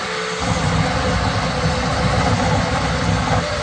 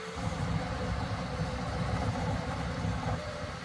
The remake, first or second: second